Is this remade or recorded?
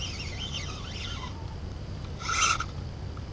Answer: recorded